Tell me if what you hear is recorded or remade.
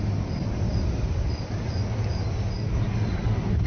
recorded